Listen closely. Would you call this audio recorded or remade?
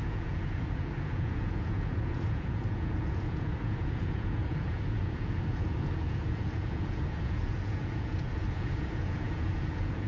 remade